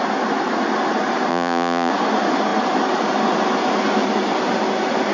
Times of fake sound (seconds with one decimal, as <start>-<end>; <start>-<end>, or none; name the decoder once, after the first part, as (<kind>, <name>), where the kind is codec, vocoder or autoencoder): 1.3-1.9 (vocoder, Vocos)